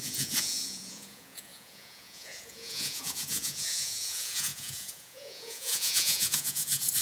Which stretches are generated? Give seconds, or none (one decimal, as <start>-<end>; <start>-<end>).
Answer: 0.0-7.0